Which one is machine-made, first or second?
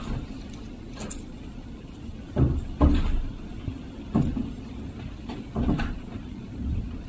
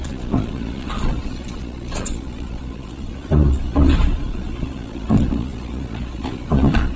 second